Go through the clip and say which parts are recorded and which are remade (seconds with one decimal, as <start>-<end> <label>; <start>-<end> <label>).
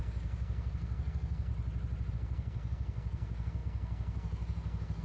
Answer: 0.0-1.5 remade; 1.5-2.1 recorded; 2.1-5.0 remade